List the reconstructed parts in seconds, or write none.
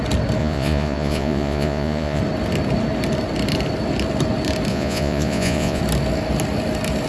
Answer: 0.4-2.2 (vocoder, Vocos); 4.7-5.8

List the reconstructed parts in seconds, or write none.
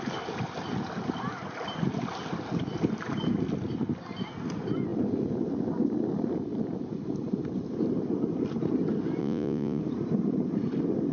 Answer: 9.2-9.8 (vocoder, Vocos)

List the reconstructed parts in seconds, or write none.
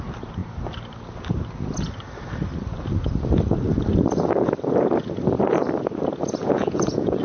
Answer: 6.4-7.2 (vocoder, Vocos)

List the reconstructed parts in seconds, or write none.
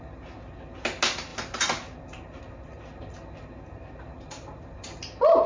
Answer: none